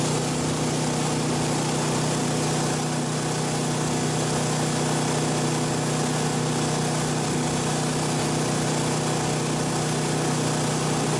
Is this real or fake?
real